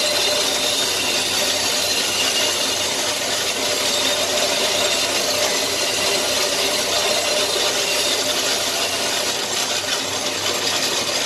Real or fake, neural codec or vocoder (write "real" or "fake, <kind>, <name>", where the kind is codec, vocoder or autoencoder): real